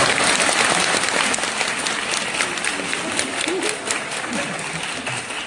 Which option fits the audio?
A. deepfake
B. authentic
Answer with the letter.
B